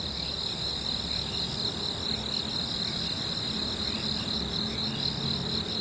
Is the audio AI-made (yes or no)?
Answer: no